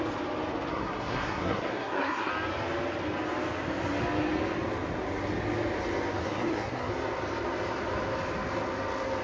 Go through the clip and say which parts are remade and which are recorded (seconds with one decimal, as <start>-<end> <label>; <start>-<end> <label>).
0.0-0.7 recorded; 0.7-2.3 remade; 2.3-6.2 recorded; 6.2-6.9 remade; 6.9-9.2 recorded